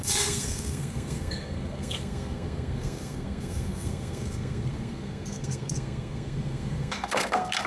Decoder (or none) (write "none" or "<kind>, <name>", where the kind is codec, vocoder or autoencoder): codec, SNAC